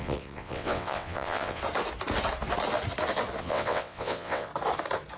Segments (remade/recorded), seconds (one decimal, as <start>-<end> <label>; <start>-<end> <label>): 0.0-1.6 remade; 1.6-3.4 recorded; 3.4-4.5 remade; 4.5-5.2 recorded